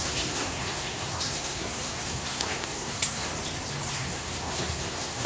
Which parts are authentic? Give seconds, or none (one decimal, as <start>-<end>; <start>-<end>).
3.3-3.9